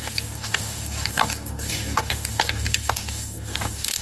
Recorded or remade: remade